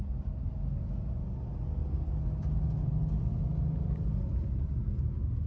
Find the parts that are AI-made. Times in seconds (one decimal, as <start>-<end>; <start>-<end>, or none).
none